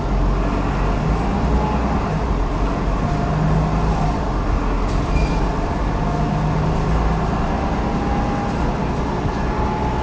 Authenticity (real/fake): real